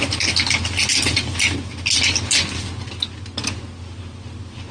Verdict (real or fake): real